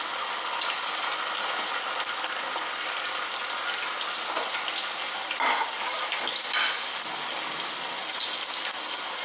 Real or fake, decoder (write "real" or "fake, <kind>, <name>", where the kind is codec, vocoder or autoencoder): real